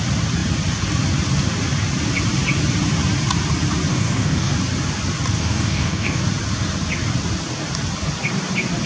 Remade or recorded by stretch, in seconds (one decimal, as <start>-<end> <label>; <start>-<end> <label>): 0.0-3.9 recorded; 3.9-4.5 remade; 4.5-5.4 recorded; 5.4-6.2 remade; 6.2-8.9 recorded